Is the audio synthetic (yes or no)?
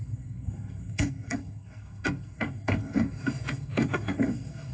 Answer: yes